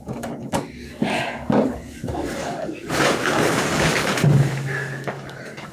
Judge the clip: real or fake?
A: fake